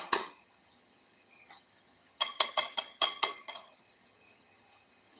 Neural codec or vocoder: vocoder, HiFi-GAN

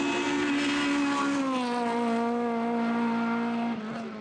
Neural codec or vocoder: none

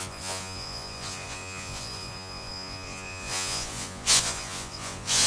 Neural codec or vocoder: vocoder, Vocos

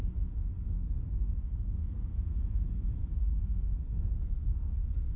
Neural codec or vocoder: codec, SNAC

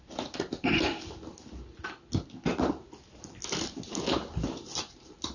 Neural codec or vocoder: none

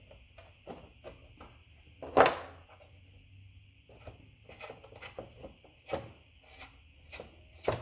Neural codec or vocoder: none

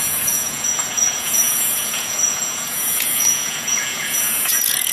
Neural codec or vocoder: vocoder, Vocos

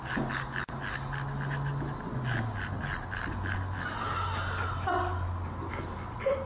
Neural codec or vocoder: none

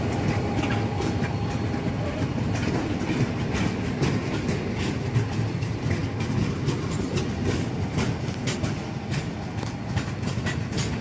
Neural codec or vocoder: none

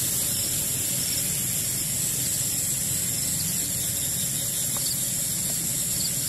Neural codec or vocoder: none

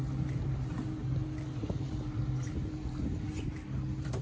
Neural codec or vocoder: none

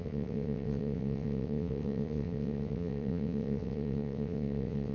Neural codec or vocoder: vocoder, WaveNeXt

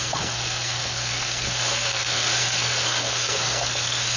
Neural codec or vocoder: codec, SNAC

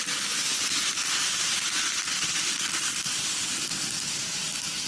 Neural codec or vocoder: none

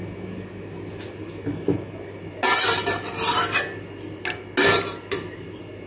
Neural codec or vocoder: none